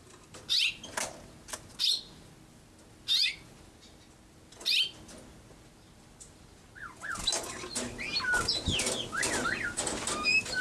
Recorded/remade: recorded